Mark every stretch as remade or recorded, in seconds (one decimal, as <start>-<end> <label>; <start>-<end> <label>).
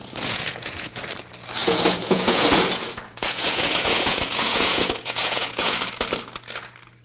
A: 0.0-1.0 remade; 1.0-1.6 recorded; 1.6-5.8 remade; 5.8-7.0 recorded